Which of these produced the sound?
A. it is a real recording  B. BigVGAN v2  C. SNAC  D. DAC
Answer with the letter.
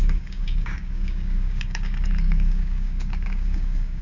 D